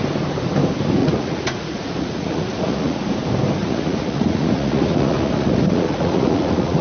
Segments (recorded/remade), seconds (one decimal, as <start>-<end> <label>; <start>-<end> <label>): 0.0-1.0 recorded; 1.0-3.0 remade; 3.0-3.6 recorded; 3.6-6.8 remade